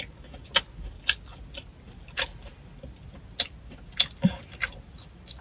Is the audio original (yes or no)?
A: yes